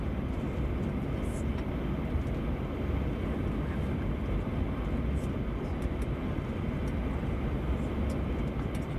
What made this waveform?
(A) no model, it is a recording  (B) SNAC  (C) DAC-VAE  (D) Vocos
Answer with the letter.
A